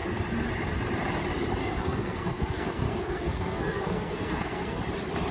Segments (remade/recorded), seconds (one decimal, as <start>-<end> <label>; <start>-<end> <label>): 0.0-1.6 recorded; 1.6-4.8 remade; 4.8-5.3 recorded